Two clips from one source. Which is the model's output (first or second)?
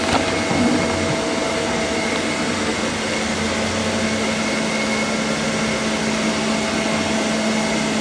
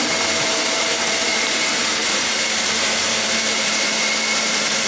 second